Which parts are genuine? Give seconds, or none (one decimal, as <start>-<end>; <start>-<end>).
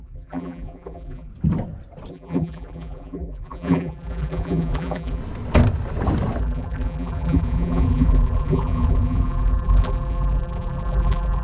1.3-2.1; 5.2-6.4